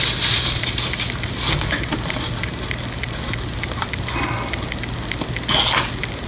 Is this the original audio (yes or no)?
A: yes